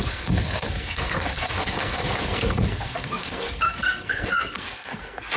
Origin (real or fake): fake